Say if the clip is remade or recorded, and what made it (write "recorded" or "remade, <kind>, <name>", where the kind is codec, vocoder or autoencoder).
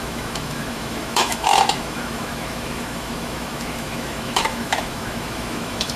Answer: remade, autoencoder, DAC-VAE